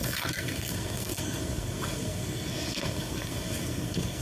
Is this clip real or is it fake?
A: fake